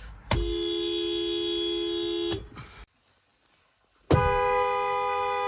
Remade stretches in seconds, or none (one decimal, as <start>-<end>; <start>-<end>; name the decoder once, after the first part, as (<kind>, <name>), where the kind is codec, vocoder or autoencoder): none